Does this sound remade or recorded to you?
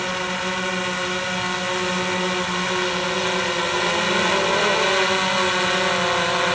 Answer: recorded